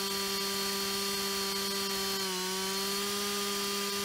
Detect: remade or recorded recorded